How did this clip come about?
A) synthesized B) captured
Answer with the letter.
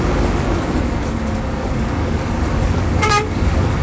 A